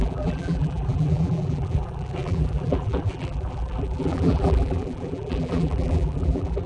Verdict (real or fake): fake